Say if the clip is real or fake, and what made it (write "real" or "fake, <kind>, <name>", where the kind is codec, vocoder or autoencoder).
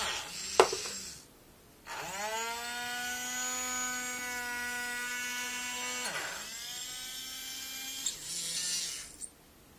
real